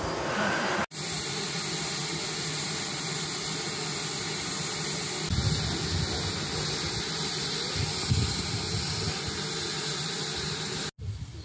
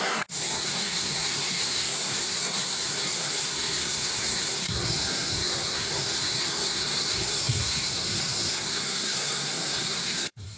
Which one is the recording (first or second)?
first